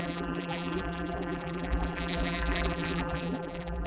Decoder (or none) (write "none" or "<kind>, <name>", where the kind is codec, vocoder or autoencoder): vocoder, BigVGAN v2